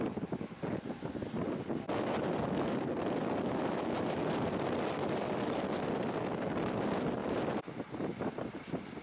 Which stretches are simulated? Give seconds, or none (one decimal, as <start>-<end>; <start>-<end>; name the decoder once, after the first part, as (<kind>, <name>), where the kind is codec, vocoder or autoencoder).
none